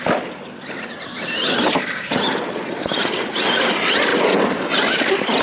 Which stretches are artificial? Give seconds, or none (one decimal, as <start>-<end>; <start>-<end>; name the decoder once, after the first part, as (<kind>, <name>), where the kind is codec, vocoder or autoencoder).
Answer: 1.7-3.4 (vocoder, BigVGAN v2); 4.1-5.4